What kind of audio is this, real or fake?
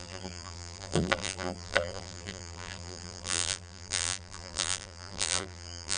fake